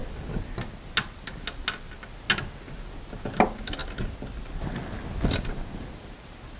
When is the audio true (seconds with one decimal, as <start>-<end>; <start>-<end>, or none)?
0.0-6.6